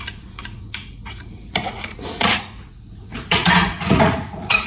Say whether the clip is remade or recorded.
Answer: remade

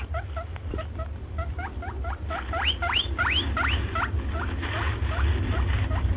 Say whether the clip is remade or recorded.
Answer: recorded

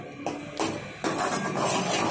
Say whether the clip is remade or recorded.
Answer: recorded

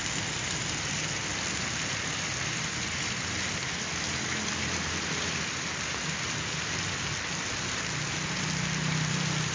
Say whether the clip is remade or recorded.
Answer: recorded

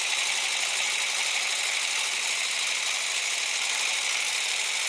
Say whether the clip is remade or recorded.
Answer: recorded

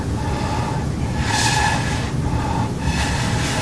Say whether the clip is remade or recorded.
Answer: recorded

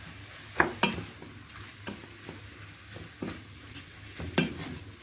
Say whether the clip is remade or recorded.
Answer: recorded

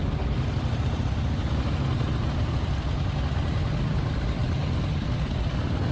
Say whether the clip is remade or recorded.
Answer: recorded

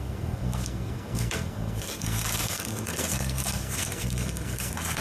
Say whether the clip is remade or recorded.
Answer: remade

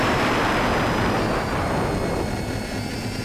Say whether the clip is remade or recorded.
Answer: remade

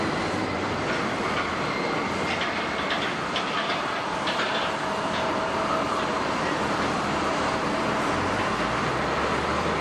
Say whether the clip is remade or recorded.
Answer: remade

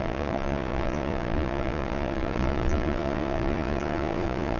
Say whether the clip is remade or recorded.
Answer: remade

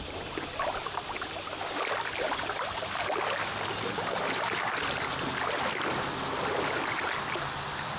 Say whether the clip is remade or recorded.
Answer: recorded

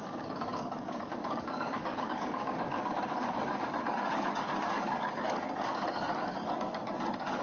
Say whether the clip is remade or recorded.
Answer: remade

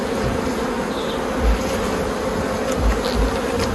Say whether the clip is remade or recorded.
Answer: recorded